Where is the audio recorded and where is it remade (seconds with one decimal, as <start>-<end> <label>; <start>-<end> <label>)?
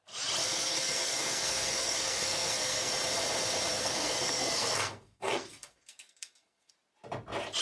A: 0.0-0.4 recorded; 0.4-2.9 remade; 2.9-3.7 recorded; 3.7-6.7 remade; 6.7-7.6 recorded